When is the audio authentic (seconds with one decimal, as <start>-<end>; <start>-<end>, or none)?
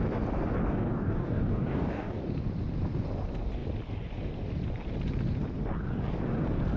0.0-0.6; 2.2-6.8